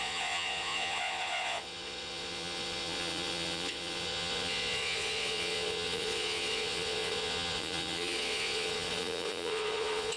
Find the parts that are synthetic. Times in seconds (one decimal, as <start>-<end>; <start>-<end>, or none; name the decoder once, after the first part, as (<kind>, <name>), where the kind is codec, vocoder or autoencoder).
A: 0.0-10.2 (vocoder, Vocos)